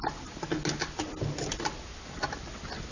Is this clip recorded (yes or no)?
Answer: yes